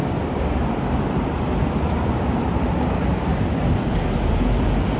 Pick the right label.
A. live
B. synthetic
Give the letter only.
B